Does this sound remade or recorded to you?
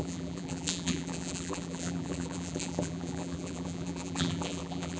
remade